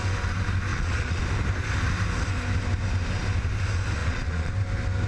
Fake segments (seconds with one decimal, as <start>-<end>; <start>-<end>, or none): 0.7-1.2; 4.0-4.5